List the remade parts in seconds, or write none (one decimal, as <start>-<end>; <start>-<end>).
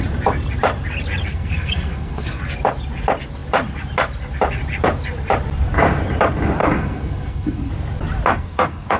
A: 1.3-2.4; 6.6-7.7; 8.3-9.0